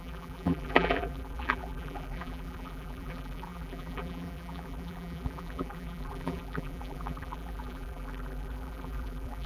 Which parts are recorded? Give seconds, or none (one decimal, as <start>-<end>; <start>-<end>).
none

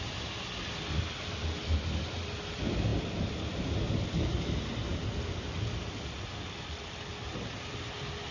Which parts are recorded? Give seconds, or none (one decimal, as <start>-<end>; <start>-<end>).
0.0-8.3

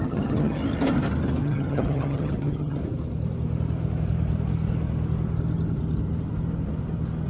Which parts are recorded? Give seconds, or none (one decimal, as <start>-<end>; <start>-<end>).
0.6-1.4; 2.8-7.3

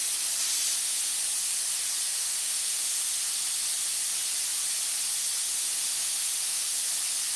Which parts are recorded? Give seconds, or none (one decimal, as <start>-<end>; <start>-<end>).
0.0-2.2; 3.3-5.4; 6.8-7.4

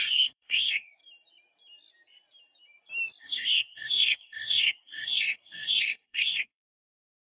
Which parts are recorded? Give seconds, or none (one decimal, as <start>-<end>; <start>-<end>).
1.0-3.2

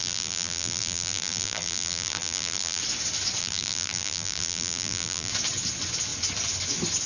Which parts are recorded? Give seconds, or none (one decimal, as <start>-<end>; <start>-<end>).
2.8-3.4; 5.3-7.1